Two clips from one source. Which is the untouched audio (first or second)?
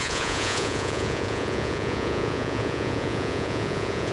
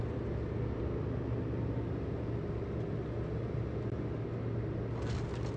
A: second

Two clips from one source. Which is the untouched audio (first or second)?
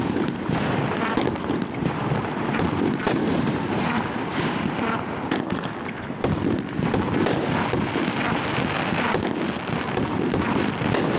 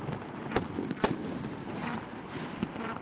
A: second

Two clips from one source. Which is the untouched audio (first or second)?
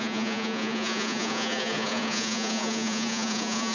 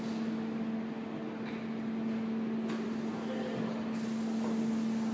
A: second